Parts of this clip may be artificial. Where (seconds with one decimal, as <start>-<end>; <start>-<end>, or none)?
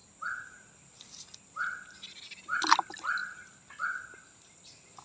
none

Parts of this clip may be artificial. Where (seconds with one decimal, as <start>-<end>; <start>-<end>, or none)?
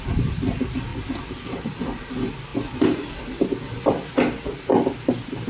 0.9-2.1; 2.5-3.2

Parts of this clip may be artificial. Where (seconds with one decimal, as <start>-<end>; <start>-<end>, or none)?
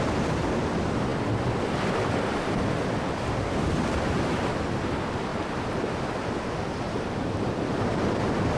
0.0-1.1; 4.0-5.3; 7.3-8.6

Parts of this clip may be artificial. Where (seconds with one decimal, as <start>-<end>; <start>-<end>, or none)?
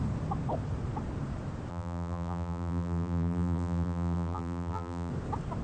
1.7-5.1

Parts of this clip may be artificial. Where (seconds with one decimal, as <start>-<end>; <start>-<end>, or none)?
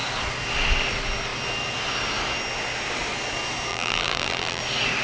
3.7-4.6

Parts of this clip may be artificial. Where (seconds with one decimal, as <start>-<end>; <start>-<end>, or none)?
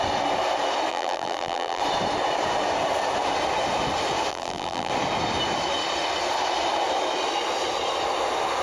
0.9-1.8; 4.3-4.9